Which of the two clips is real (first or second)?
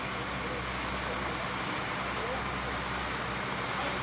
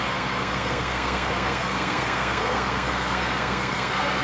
first